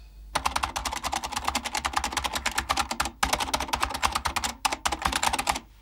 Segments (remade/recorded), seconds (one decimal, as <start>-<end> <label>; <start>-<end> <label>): 0.0-5.8 recorded